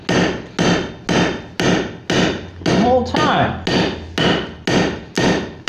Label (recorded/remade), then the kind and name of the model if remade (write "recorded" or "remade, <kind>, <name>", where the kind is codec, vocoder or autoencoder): recorded